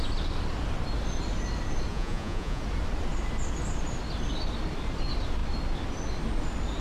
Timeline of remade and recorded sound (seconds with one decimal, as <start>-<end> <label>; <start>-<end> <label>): 0.0-1.9 recorded; 1.9-2.6 remade; 2.6-6.8 recorded